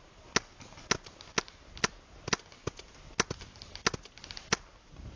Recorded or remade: recorded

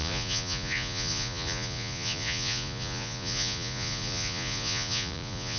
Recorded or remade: remade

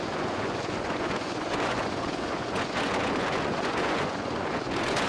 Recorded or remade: remade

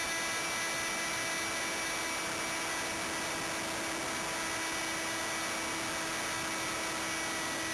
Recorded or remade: recorded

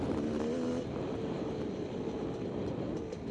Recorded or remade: recorded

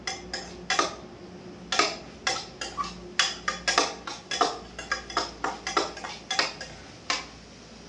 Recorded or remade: recorded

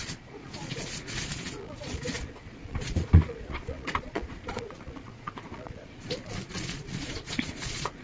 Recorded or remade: remade